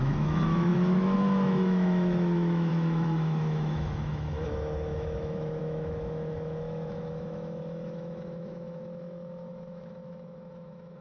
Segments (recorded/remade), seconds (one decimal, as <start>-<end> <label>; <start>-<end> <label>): 0.0-11.0 remade